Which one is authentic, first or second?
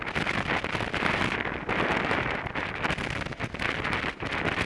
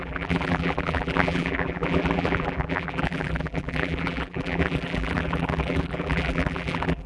first